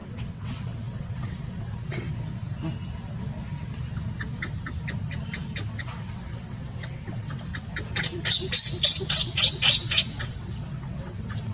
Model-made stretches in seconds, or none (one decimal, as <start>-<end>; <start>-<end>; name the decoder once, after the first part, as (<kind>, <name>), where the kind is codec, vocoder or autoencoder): 0.0-2.4 (vocoder, WaveNeXt); 5.7-7.5; 9.0-11.5